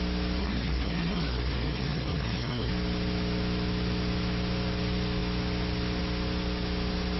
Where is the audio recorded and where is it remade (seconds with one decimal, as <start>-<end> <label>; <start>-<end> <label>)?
0.0-0.4 recorded; 0.4-2.7 remade; 2.7-7.2 recorded